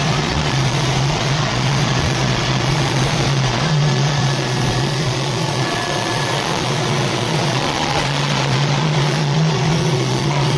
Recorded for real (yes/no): no